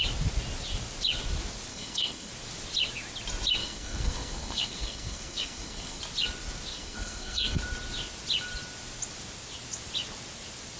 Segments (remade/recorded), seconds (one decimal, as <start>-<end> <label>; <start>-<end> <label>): 0.0-1.7 recorded; 1.7-2.3 remade; 2.3-3.6 recorded; 3.6-6.0 remade; 6.0-6.7 recorded; 6.7-7.6 remade; 7.6-10.8 recorded